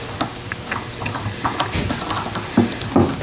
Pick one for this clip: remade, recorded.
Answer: recorded